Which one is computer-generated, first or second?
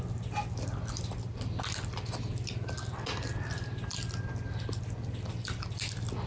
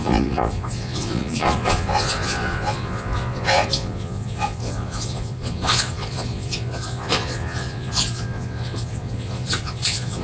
second